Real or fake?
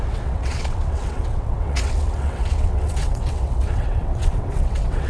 fake